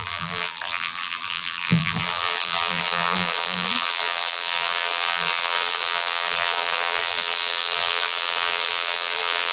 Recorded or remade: remade